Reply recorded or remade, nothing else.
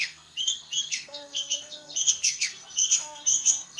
remade